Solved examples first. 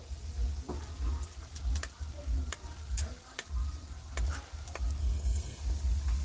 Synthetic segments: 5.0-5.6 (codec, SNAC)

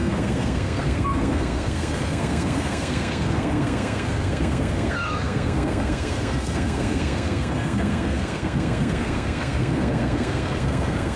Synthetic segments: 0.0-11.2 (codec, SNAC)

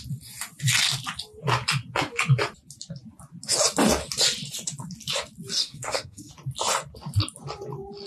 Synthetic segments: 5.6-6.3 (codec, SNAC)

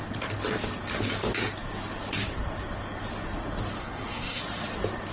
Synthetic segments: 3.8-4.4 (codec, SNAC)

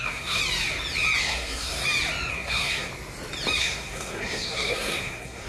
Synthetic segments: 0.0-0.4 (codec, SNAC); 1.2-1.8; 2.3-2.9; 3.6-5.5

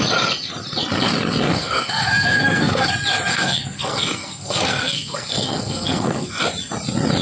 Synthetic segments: 1.6-2.9 (codec, SNAC); 3.3-6.4